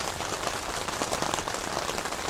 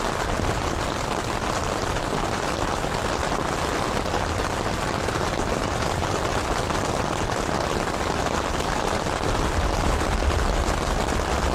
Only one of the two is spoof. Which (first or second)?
first